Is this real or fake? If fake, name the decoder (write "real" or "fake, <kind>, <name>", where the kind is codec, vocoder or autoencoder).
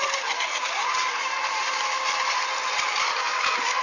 real